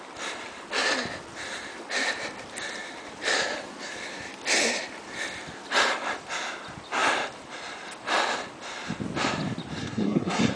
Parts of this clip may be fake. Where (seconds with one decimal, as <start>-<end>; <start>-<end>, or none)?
9.8-10.5